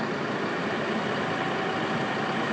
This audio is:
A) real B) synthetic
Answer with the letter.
A